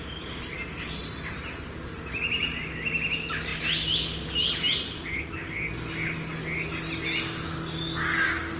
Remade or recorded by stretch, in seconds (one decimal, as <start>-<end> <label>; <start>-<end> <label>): 0.0-8.6 recorded